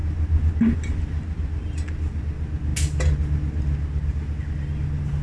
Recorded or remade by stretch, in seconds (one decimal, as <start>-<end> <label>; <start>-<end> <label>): 0.0-5.2 recorded